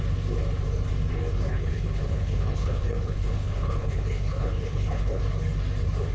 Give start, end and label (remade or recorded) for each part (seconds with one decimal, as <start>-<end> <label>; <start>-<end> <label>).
0.0-1.5 recorded; 1.5-5.2 remade; 5.2-6.1 recorded